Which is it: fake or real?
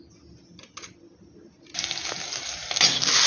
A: real